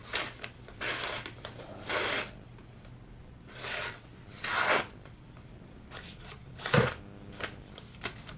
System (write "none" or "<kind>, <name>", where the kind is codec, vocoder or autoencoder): none